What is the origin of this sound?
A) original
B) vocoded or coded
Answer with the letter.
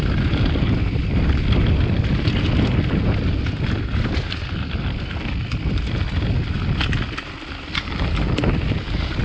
A